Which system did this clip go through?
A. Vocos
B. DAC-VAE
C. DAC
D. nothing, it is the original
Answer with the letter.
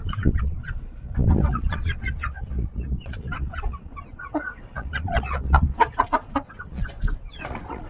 A